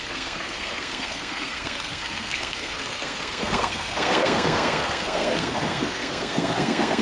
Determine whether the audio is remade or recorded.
remade